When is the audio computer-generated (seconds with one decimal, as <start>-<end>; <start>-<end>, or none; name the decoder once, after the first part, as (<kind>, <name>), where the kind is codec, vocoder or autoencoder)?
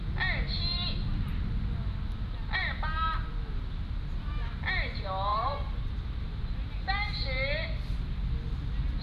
2.6-3.8 (vocoder, BigVGAN v2); 5.3-6.4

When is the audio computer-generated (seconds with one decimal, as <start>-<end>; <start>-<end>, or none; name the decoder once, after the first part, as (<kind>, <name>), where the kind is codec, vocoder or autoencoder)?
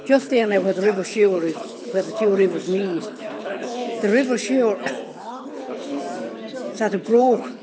0.0-3.8 (codec, HILCodec); 5.2-6.0; 6.9-7.6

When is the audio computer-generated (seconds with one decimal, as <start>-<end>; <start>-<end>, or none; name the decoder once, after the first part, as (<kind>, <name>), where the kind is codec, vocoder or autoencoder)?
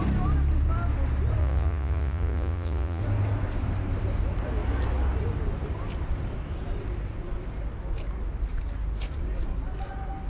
1.4-3.0 (vocoder, Vocos)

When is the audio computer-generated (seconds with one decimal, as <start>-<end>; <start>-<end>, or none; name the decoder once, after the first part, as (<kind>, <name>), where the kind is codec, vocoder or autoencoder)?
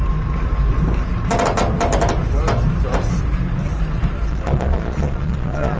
4.3-5.8 (vocoder, Vocos)